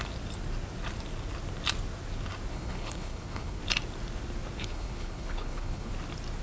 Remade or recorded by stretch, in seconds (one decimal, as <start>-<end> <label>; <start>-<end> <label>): 0.0-2.5 recorded; 2.5-3.6 remade; 3.6-4.6 recorded; 4.6-5.9 remade; 5.9-6.4 recorded